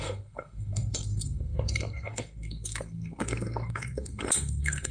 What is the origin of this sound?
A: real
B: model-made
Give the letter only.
B